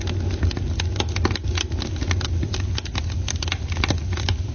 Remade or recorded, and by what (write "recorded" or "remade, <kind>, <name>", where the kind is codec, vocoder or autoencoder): recorded